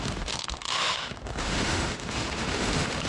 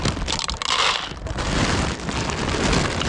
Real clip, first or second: second